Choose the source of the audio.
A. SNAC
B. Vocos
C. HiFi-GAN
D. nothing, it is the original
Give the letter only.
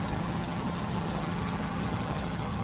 C